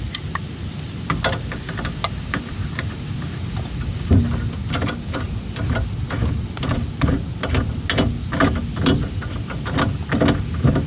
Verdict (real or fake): real